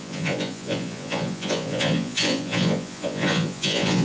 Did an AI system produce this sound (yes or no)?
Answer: yes